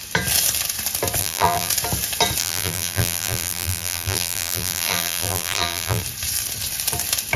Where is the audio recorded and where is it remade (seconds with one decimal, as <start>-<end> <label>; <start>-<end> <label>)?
0.0-1.2 recorded; 1.2-1.7 remade; 1.7-2.4 recorded; 2.4-6.0 remade; 6.0-7.4 recorded